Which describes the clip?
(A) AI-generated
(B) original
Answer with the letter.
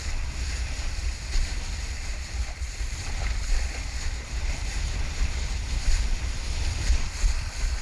A